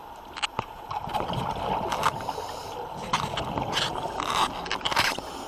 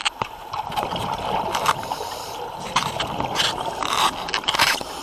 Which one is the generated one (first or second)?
second